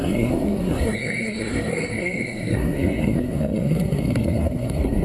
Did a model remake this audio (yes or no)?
yes